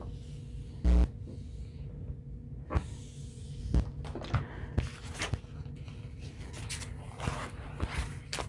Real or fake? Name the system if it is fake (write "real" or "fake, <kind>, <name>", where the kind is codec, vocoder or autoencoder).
real